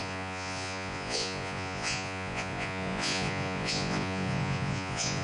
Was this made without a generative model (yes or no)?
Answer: no